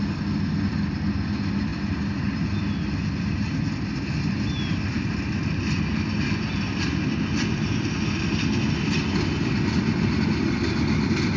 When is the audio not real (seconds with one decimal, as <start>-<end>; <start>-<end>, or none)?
none